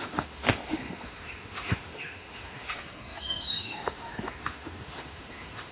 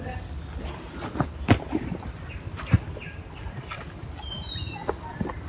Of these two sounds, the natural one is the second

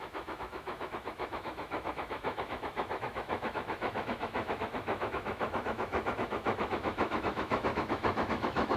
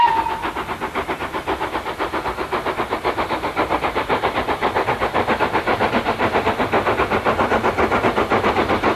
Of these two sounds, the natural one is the second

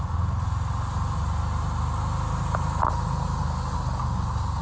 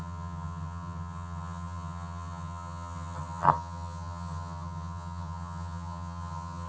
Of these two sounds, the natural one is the first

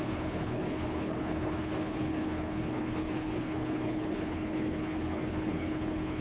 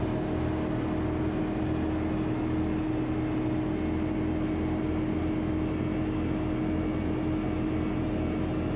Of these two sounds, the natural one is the second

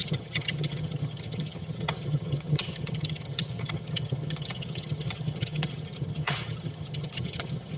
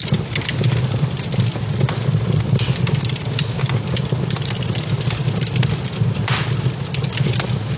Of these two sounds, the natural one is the second